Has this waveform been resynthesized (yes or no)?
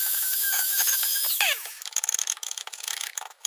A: yes